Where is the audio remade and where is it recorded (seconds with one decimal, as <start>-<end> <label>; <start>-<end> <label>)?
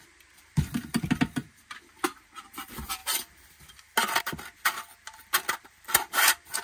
0.0-1.4 remade; 1.4-2.4 recorded; 2.4-3.0 remade; 3.0-4.2 recorded; 4.2-6.6 remade